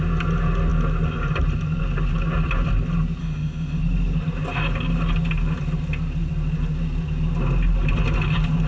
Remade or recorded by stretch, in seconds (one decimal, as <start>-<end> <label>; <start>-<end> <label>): 0.0-3.2 recorded; 3.2-3.8 remade; 3.8-8.7 recorded